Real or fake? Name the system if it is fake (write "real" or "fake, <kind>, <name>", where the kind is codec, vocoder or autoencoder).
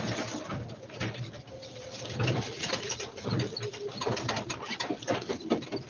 real